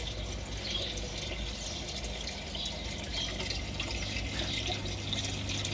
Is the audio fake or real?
real